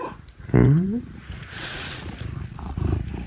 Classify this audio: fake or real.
fake